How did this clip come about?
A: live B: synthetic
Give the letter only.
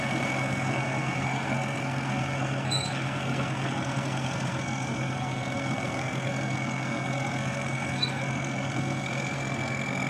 B